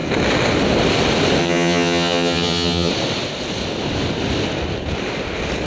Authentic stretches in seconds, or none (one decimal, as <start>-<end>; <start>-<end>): 0.0-1.4; 2.9-5.7

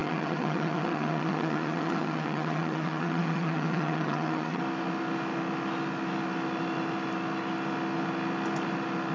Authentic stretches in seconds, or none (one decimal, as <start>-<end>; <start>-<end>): 4.6-9.1

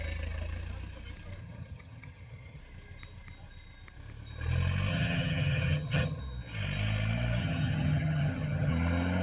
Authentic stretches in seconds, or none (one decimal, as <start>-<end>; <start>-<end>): 0.0-1.4; 2.6-4.9; 6.2-7.4; 8.7-9.2

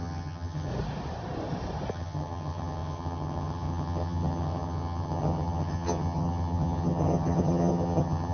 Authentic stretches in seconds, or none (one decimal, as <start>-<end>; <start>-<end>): 0.7-1.9

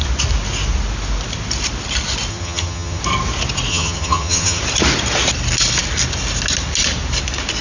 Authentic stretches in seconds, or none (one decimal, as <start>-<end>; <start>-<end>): 0.0-2.3; 3.0-3.7; 4.6-7.6